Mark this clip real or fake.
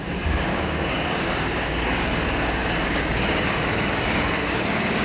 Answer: fake